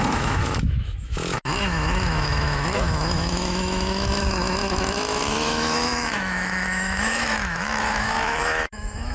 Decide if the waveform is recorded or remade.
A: remade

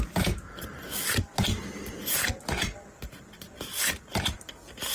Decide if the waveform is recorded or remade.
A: recorded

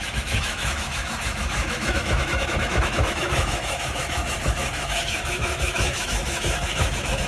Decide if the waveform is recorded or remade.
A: remade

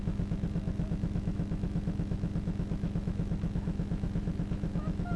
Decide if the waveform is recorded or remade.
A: remade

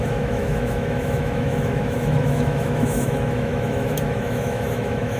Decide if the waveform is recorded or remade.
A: remade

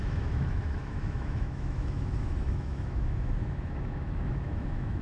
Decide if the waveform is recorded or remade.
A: remade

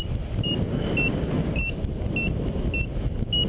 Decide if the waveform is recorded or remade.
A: recorded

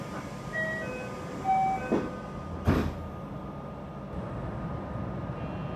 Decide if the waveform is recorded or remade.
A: recorded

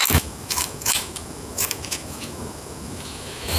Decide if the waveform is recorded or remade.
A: remade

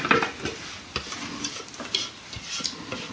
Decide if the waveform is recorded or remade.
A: recorded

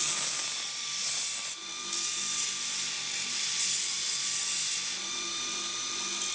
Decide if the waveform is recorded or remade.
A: recorded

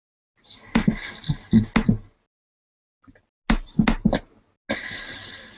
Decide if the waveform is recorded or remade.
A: recorded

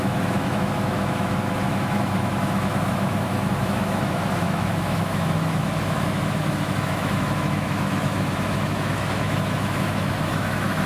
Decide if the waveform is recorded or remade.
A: remade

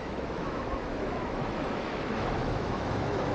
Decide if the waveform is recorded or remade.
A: remade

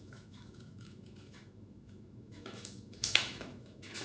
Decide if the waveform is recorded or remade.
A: remade